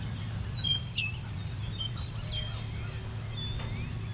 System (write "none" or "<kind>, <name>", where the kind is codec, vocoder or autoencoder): none